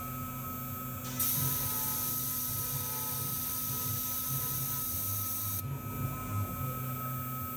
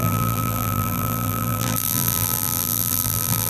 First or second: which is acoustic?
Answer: first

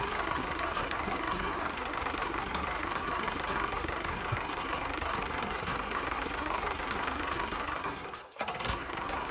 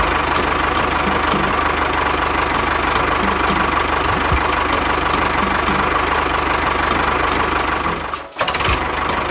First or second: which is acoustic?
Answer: second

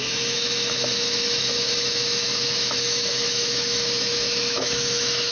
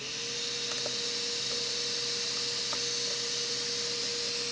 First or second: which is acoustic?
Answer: second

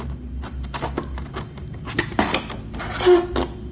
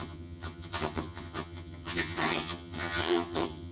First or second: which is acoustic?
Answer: first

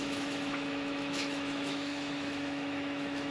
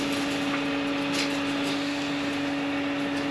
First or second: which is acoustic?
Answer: second